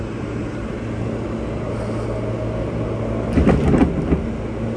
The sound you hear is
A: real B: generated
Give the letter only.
A